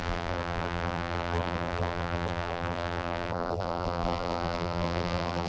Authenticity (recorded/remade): remade